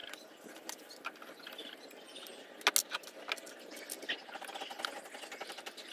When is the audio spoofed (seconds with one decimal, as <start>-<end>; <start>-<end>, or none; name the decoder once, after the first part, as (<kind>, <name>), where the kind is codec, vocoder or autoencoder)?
none